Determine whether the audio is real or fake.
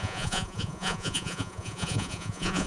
fake